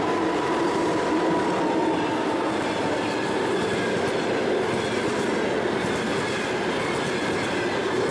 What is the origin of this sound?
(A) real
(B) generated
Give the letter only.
A